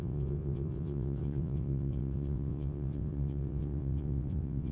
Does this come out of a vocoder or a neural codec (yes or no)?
yes